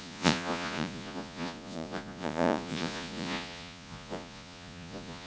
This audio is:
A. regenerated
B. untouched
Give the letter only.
A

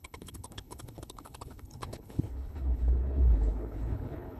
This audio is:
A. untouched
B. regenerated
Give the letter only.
B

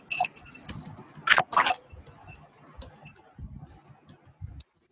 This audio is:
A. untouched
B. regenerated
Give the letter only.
A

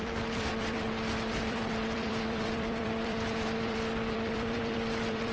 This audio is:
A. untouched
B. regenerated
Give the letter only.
B